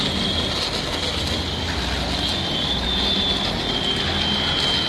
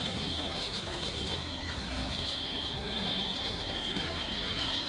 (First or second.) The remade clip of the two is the second